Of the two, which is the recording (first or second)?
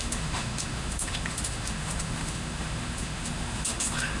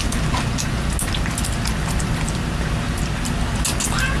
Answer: second